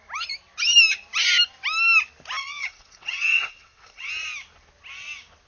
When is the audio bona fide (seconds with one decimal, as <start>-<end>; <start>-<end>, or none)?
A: 0.0-2.4; 4.1-5.5